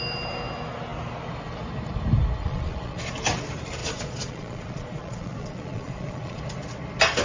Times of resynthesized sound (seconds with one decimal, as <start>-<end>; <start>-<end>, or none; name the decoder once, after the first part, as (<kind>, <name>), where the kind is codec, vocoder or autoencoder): 2.4-3.0 (vocoder, Vocos); 3.8-6.4